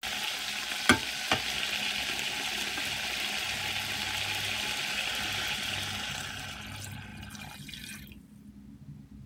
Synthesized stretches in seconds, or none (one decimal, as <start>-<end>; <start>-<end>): none